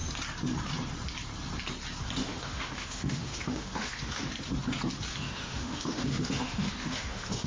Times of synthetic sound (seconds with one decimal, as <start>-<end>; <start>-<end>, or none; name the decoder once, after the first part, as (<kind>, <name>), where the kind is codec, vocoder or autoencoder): 2.2-4.3 (autoencoder, DAC-VAE); 5.1-7.5

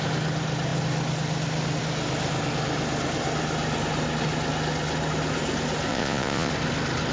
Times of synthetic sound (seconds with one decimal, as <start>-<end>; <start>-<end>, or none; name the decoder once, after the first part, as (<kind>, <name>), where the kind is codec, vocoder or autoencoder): 5.9-6.5 (vocoder, Vocos)

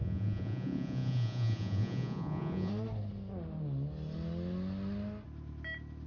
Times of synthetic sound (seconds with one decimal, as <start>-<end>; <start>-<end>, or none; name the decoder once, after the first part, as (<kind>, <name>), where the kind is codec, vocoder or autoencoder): 0.0-2.7 (vocoder, Vocos)

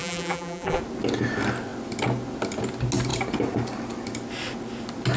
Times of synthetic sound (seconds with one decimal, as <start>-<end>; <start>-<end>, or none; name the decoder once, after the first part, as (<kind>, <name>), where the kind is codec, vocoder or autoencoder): 0.0-0.8 (vocoder, BigVGAN v2)

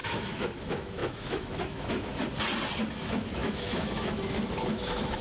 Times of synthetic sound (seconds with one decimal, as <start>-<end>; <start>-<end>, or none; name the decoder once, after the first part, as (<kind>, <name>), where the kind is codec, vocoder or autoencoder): 0.0-2.2 (autoencoder, DAC-VAE); 3.0-5.2

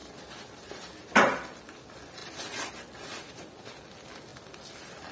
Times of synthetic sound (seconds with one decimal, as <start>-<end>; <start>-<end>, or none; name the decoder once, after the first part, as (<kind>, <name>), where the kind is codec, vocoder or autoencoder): none

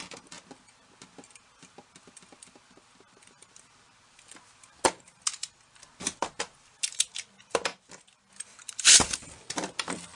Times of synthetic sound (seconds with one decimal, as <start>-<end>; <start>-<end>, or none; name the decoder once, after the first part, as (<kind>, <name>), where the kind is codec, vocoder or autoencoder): none